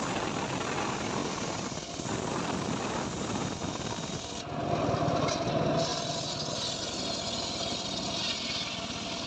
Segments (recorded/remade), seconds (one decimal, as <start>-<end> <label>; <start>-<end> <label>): 0.0-9.3 recorded